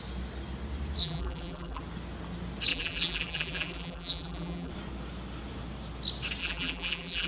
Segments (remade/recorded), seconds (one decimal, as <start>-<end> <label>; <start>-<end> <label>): 0.0-1.0 recorded; 1.0-1.8 remade; 1.8-2.7 recorded; 2.7-4.7 remade; 4.7-6.4 recorded; 6.4-7.3 remade